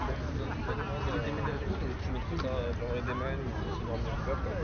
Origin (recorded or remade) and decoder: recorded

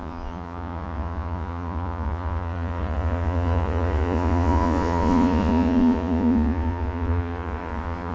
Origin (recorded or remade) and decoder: remade, vocoder, Vocos